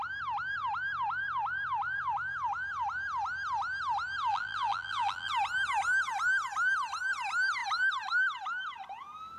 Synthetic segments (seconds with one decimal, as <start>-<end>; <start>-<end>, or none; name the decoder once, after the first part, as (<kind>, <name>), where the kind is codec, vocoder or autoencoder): 4.3-5.3 (vocoder, BigVGAN v2)